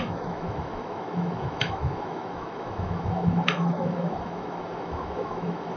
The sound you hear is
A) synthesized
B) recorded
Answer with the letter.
A